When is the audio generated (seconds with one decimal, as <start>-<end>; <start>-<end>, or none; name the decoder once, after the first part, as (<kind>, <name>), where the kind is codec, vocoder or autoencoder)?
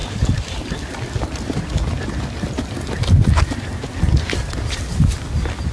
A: none